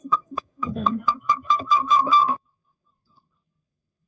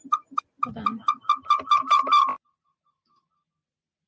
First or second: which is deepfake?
first